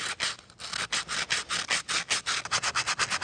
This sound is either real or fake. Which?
real